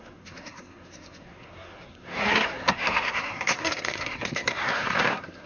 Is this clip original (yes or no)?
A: no